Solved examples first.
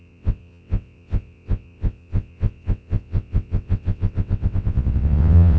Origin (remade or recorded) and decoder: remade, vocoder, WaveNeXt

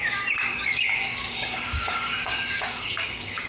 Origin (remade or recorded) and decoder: remade, codec, DAC